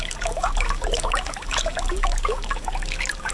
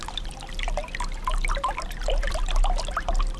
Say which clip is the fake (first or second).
first